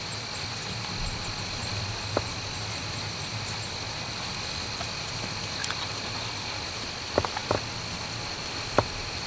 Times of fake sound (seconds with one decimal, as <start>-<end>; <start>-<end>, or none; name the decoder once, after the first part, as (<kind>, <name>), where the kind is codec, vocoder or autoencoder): none